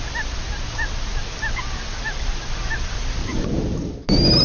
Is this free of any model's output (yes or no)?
yes